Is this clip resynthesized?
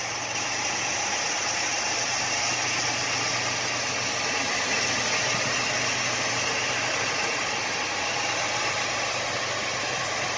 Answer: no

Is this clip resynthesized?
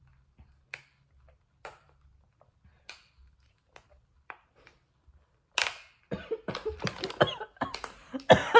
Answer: no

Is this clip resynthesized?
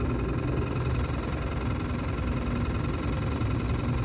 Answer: no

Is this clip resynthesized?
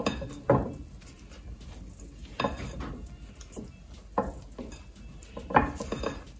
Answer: no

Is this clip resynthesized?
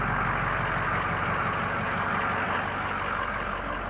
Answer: no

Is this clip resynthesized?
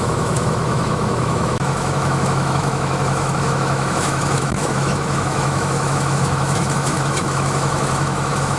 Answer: yes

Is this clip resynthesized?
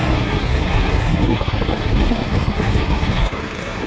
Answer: yes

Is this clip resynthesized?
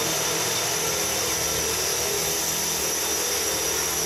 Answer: no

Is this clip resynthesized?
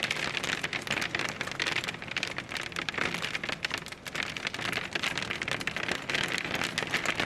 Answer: no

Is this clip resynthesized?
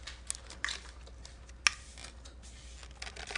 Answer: no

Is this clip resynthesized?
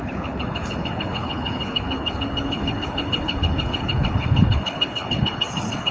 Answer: yes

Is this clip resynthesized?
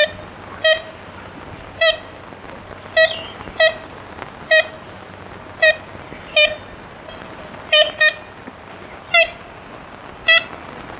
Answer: no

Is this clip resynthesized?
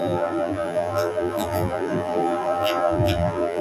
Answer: yes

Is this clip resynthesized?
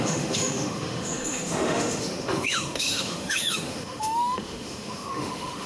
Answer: yes